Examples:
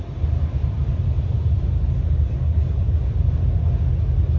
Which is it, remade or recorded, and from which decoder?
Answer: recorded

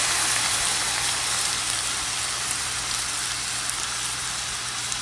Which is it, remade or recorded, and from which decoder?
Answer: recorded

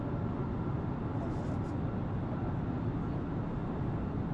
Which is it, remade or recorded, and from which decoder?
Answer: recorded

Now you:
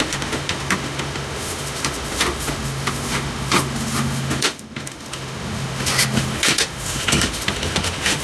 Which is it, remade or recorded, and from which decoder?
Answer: remade, autoencoder, DAC-VAE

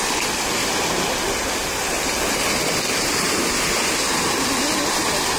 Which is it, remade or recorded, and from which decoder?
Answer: recorded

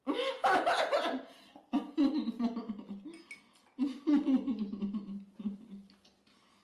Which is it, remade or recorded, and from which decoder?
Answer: recorded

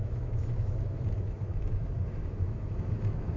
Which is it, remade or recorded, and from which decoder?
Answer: remade, autoencoder, DAC-VAE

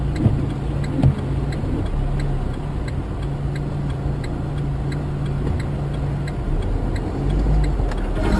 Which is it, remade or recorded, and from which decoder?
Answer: recorded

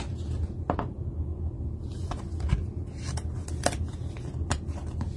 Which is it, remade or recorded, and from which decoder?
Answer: recorded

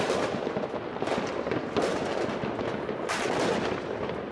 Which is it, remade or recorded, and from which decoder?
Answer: recorded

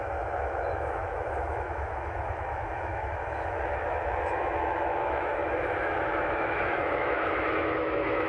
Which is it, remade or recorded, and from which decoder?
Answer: remade, autoencoder, DAC-VAE